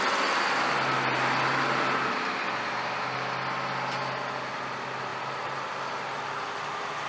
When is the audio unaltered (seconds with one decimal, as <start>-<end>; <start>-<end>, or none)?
0.0-5.1; 6.3-7.1